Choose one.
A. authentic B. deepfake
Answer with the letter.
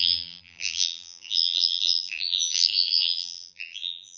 B